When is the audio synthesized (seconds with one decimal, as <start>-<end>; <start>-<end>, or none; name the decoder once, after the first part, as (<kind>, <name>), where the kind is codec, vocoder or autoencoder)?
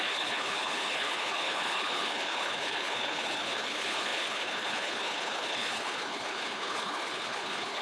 0.0-7.8 (codec, HILCodec)